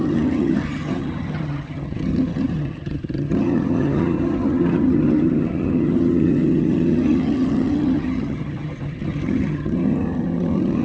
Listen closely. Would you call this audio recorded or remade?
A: remade